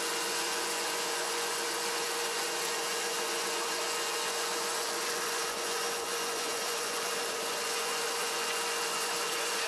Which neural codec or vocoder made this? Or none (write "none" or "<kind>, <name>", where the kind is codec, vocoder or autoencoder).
vocoder, Vocos